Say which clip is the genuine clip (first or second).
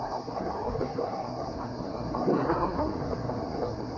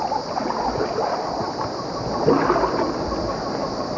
second